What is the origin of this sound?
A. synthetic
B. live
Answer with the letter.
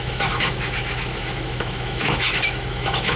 A